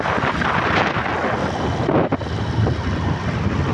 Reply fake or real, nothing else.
real